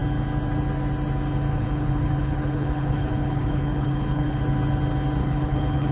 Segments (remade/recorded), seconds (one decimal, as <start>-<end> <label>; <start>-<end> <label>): 0.0-1.5 recorded; 1.5-4.4 remade; 4.4-5.2 recorded; 5.2-5.9 remade